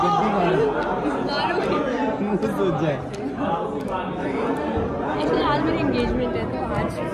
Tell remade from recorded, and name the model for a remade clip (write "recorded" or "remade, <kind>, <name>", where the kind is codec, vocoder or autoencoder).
recorded